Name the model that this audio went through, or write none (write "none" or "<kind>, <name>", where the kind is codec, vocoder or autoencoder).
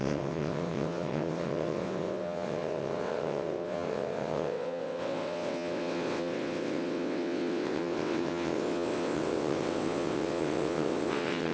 vocoder, WaveNeXt